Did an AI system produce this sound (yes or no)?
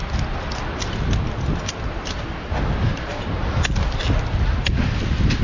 no